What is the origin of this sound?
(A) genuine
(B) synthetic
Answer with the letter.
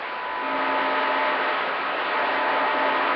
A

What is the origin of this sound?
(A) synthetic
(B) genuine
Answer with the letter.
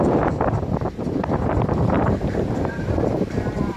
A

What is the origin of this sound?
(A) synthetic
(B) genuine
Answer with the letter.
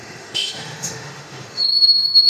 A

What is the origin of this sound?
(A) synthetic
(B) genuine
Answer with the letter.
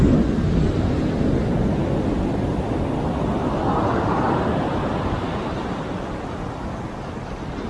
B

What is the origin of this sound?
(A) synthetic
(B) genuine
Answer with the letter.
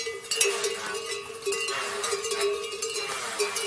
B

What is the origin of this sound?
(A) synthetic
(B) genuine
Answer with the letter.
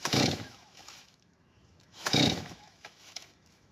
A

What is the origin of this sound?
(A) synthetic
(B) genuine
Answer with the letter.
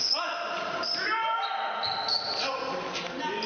B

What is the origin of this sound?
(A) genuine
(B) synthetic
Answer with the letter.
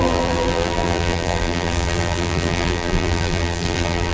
B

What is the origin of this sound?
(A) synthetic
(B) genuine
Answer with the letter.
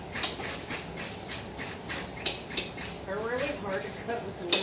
B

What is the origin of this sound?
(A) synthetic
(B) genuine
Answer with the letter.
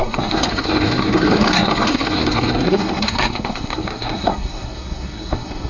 A